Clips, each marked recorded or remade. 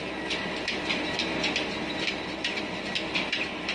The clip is remade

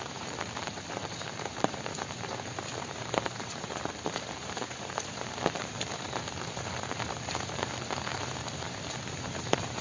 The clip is remade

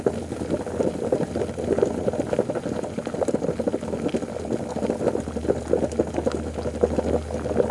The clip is recorded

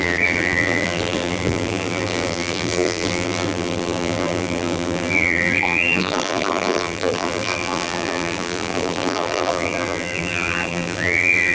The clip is remade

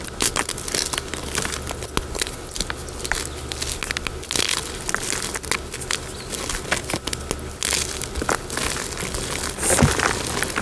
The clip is recorded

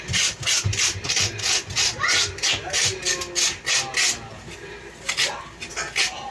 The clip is recorded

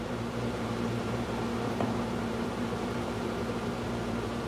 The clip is remade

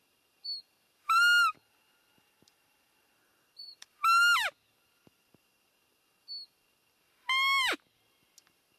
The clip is recorded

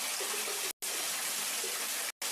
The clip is recorded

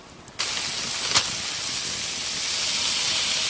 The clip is recorded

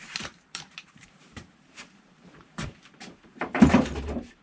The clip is remade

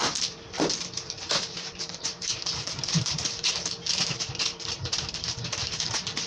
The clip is remade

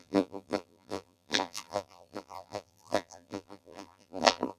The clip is remade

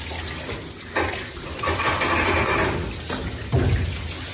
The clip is recorded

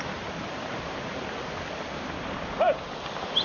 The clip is remade